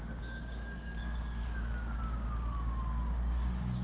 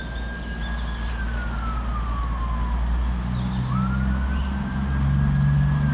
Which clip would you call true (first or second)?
second